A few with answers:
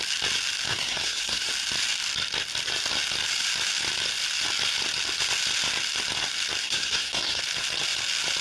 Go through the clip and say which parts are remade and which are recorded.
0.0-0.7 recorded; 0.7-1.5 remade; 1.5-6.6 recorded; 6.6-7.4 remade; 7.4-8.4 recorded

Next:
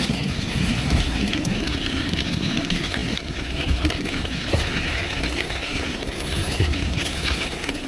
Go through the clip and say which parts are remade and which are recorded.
0.0-7.9 remade